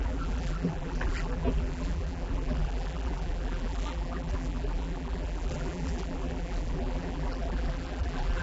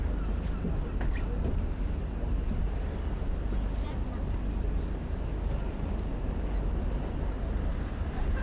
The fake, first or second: first